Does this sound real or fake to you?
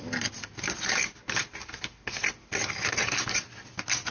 real